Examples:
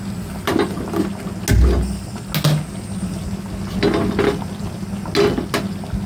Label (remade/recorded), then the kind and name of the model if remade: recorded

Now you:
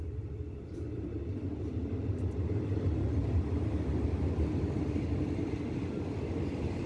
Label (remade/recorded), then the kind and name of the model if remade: recorded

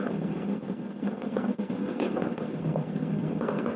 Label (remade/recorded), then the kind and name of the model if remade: remade, codec, SNAC